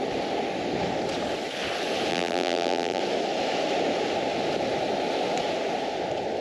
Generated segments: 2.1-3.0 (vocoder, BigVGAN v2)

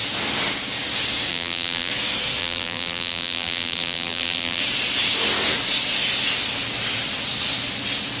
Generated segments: 1.3-1.9 (vocoder, BigVGAN v2); 2.4-4.6